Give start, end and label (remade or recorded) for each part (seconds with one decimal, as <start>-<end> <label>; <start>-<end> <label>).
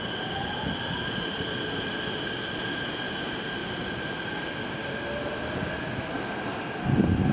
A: 0.0-7.3 recorded